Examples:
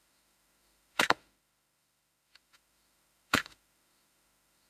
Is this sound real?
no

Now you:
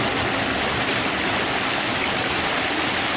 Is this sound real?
yes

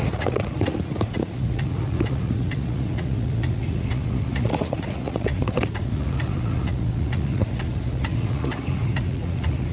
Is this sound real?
no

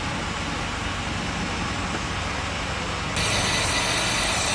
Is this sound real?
yes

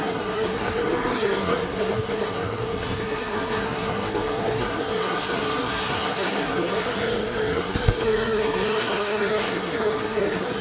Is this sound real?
no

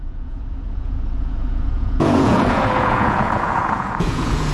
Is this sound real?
no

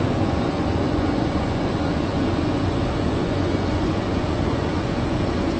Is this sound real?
no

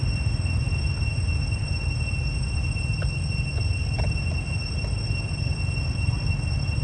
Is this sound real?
yes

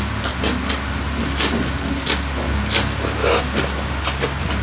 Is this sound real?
yes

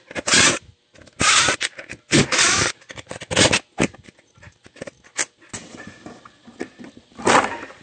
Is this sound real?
yes